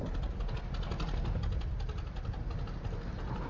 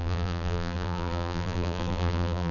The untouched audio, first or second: first